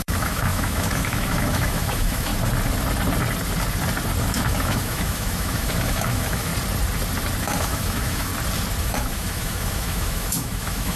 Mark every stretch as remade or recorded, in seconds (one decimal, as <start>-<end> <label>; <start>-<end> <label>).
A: 0.0-2.3 remade; 2.3-4.2 recorded; 4.2-6.5 remade; 6.5-7.4 recorded; 7.4-8.3 remade; 8.3-8.8 recorded; 8.8-11.0 remade